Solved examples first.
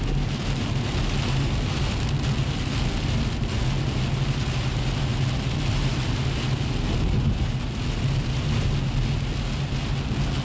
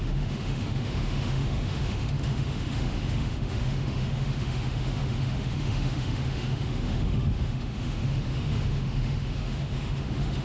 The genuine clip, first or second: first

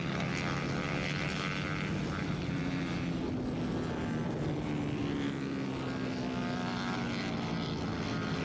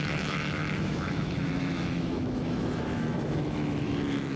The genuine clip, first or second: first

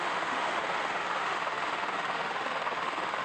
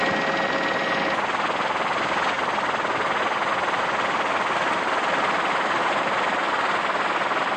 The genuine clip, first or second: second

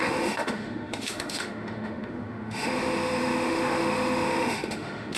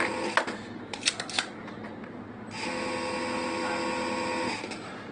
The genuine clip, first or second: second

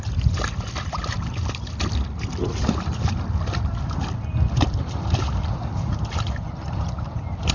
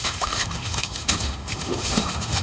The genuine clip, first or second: first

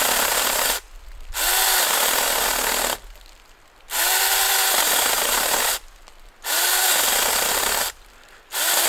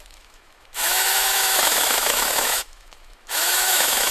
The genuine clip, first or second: first